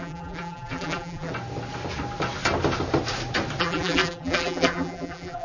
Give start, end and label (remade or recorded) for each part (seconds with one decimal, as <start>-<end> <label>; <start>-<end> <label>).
0.0-1.3 remade; 1.3-3.6 recorded; 3.6-5.4 remade